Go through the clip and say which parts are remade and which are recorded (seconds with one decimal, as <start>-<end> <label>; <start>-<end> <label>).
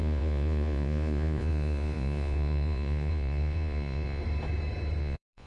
0.0-4.2 remade; 4.2-5.0 recorded; 5.0-5.5 remade